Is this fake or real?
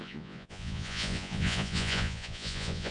fake